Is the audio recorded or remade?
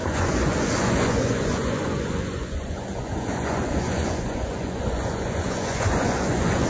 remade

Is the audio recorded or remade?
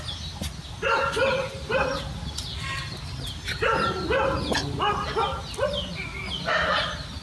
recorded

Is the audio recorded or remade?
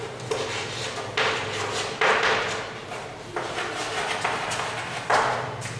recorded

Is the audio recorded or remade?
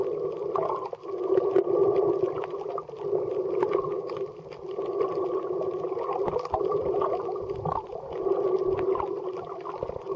recorded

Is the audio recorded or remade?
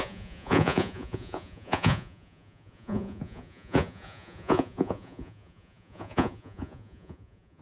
remade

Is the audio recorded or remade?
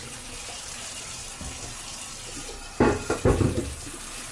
recorded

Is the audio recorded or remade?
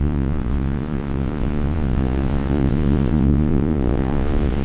remade